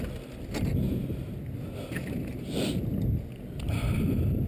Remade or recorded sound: recorded